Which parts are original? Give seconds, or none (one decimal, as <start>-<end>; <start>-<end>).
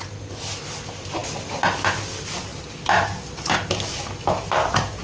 0.0-5.0